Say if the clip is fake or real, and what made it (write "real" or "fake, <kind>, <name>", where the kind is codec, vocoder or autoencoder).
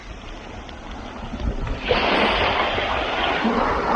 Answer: real